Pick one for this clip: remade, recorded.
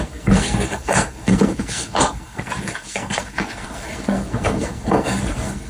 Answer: remade